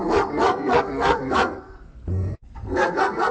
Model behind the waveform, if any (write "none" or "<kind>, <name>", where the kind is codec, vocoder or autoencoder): codec, SNAC